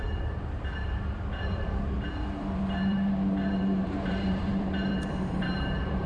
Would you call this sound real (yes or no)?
no